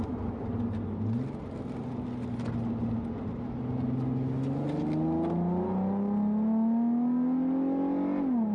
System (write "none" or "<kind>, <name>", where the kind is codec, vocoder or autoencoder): none